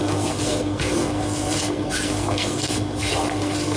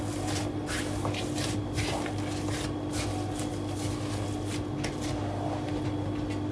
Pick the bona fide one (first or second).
second